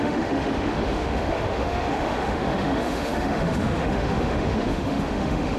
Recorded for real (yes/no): no